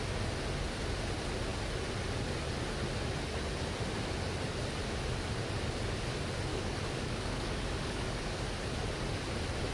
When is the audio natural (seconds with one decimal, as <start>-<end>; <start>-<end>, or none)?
0.0-6.5; 8.4-9.7